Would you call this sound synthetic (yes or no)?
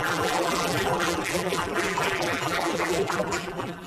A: yes